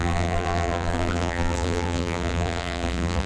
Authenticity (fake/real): fake